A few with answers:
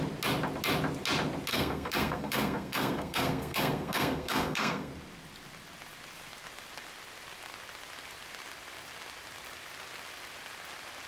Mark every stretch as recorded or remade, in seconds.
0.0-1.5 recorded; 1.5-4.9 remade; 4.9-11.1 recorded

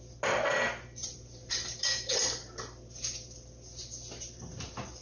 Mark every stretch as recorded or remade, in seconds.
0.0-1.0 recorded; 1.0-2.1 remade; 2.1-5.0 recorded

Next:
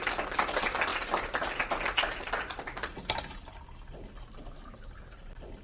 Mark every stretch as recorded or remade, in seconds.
0.0-5.6 recorded

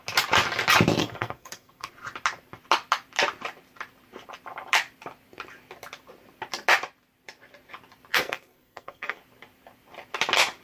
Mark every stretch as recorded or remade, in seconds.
0.0-1.0 recorded; 1.0-1.9 remade; 1.9-8.1 recorded; 8.1-9.2 remade; 9.2-10.6 recorded

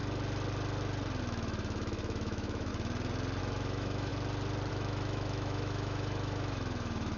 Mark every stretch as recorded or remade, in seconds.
0.0-1.2 recorded; 1.2-2.7 remade; 2.7-3.4 recorded; 3.4-4.1 remade; 4.1-4.7 recorded; 4.7-7.2 remade

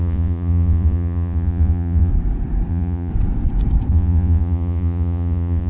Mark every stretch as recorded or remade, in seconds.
0.0-2.1 remade; 2.1-2.7 recorded; 2.7-3.1 remade; 3.1-3.9 recorded; 3.9-5.7 remade

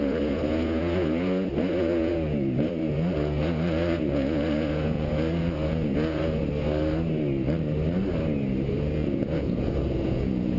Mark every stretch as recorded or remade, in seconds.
0.0-6.4 remade; 6.4-8.7 recorded; 8.7-10.6 remade

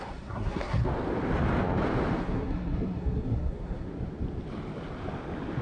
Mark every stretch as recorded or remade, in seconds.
0.0-0.9 remade; 0.9-2.2 recorded; 2.2-3.9 remade; 3.9-5.6 recorded